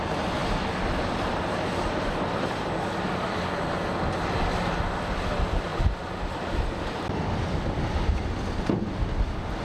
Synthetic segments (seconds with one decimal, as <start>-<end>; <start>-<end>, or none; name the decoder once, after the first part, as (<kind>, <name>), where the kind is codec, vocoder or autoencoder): 0.4-0.9 (vocoder, BigVGAN v2)